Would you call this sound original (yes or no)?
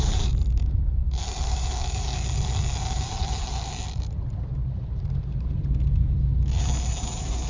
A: no